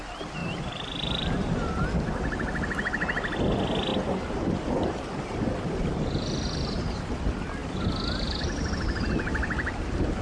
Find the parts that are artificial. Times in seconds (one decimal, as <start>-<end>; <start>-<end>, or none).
0.4-1.7